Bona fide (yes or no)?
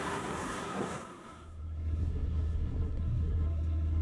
no